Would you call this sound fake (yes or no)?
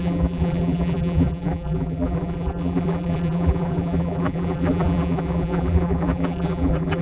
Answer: yes